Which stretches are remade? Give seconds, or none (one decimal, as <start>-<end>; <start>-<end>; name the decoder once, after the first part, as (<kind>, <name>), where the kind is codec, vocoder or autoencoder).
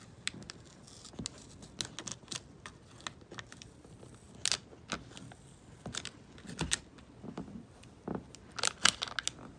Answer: none